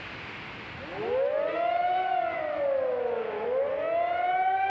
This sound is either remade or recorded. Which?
recorded